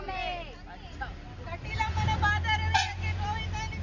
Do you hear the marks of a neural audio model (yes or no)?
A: no